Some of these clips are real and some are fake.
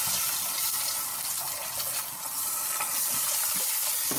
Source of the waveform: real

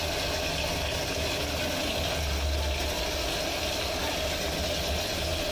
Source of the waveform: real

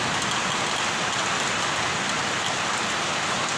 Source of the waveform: real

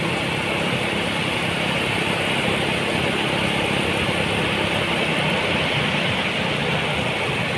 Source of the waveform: real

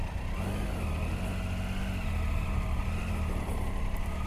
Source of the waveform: real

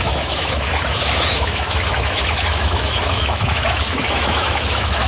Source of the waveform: fake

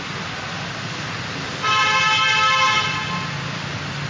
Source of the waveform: real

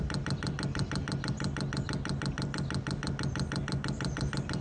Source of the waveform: real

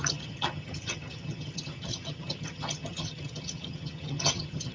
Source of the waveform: fake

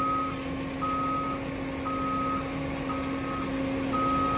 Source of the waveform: real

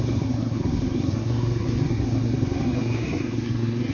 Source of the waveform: fake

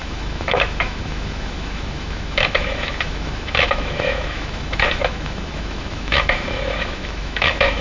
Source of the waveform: fake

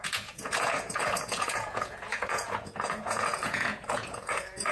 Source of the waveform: fake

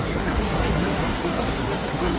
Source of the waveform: fake